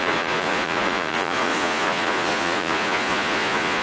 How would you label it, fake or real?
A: fake